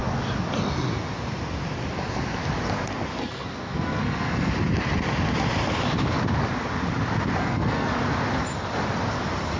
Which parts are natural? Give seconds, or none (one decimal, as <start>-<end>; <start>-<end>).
0.0-3.2; 4.5-7.4; 7.9-9.6